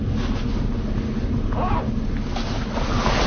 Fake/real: real